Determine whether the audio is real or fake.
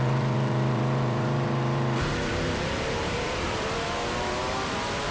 fake